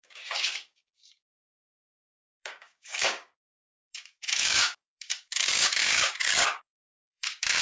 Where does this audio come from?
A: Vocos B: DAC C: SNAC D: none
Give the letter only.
B